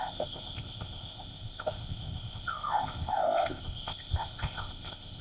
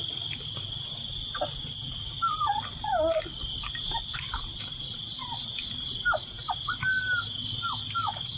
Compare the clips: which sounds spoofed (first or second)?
first